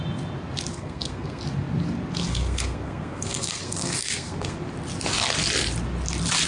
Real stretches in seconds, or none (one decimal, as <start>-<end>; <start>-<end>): 0.0-0.7; 1.4-2.2; 4.6-6.5